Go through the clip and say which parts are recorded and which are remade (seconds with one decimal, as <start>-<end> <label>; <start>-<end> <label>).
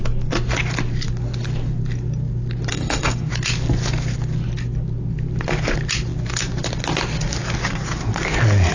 0.0-2.7 recorded; 2.7-3.3 remade; 3.3-8.7 recorded